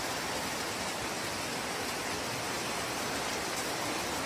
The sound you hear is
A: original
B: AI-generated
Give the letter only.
A